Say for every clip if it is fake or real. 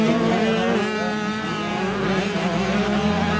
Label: real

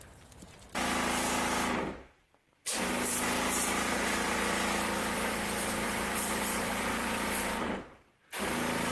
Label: fake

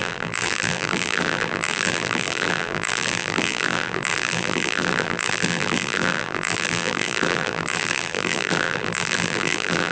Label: fake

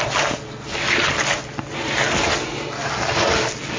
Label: real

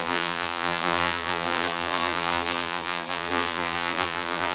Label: fake